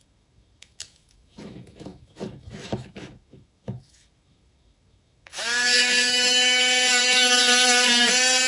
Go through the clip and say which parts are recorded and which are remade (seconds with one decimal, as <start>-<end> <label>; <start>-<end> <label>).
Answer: 0.0-7.4 remade; 7.4-8.5 recorded